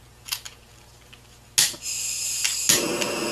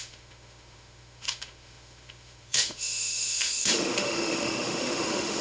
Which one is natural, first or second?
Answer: first